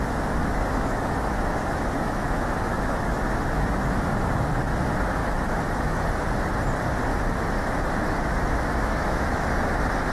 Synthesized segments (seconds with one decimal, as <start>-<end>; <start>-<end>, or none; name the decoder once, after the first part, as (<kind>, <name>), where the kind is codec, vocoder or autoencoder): 0.4-4.3 (autoencoder, DAC-VAE); 5.2-6.0; 7.1-9.5